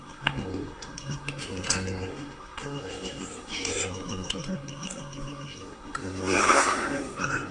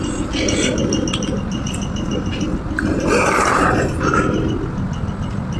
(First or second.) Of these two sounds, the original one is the second